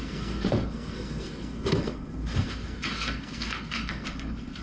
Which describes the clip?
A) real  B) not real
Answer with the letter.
B